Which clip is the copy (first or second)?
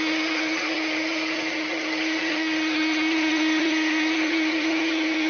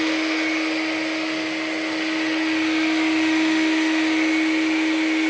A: first